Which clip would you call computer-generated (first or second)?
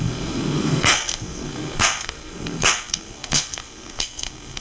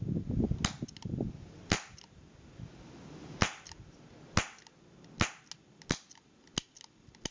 first